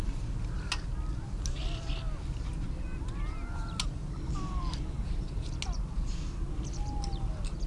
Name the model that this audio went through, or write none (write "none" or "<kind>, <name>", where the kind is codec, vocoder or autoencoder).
none